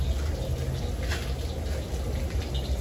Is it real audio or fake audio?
real